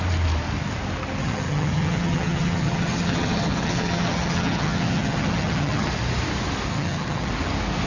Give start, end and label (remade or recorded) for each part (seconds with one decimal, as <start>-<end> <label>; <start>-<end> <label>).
0.0-1.2 recorded; 1.2-5.9 remade; 5.9-6.7 recorded; 6.7-7.3 remade; 7.3-7.9 recorded